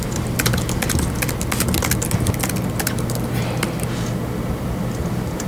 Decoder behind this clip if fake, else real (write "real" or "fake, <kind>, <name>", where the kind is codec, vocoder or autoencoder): real